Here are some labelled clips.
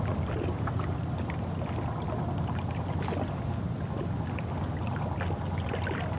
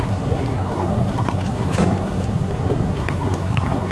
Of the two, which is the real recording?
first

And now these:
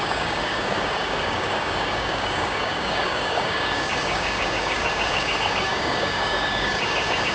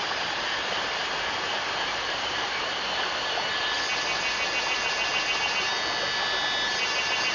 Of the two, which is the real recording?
second